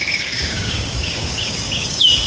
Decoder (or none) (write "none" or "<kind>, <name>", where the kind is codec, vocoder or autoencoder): codec, DAC